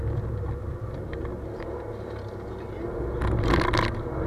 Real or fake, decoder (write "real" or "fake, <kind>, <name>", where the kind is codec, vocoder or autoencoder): real